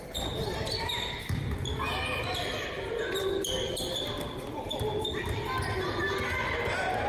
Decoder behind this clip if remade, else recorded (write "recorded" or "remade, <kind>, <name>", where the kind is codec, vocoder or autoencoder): recorded